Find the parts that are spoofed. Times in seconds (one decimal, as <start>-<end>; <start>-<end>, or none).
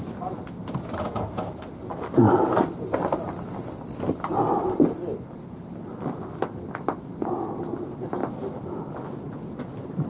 0.0-8.2; 9.3-10.1